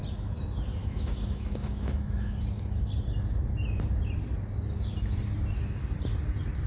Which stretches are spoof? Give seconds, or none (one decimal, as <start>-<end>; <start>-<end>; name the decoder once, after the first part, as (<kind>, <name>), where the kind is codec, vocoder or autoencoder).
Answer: 0.8-2.3 (autoencoder, DAC-VAE)